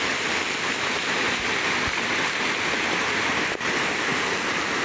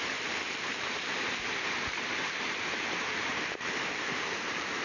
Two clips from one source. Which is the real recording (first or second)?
first